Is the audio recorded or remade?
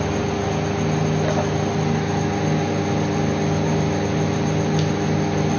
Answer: recorded